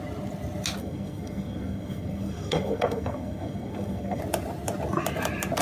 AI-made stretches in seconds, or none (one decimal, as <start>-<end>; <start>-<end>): 0.8-4.2